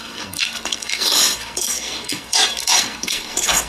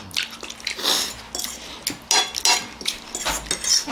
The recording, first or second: second